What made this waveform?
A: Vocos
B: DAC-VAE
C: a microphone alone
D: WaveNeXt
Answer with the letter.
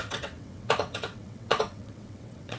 D